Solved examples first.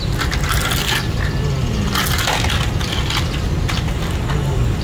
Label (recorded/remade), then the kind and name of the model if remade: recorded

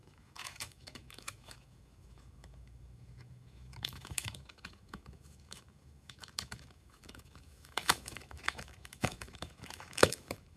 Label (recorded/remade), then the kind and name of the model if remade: remade, autoencoder, DAC-VAE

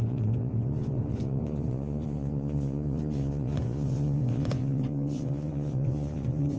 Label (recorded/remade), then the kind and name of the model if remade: remade, vocoder, Vocos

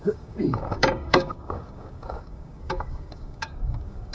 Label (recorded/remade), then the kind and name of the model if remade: remade, codec, DAC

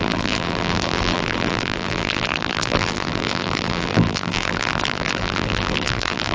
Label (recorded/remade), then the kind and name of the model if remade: remade, vocoder, BigVGAN v2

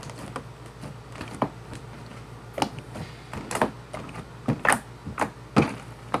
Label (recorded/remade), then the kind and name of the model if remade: recorded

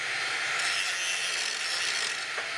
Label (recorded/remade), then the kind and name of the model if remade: recorded